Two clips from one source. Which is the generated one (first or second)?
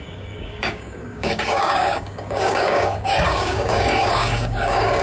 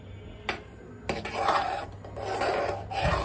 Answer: first